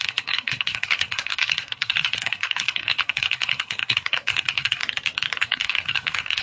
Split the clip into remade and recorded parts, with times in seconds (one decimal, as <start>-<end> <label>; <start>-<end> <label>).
0.0-4.8 remade; 4.8-5.4 recorded; 5.4-6.4 remade